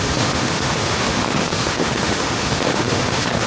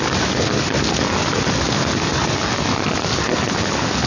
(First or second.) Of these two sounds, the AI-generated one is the first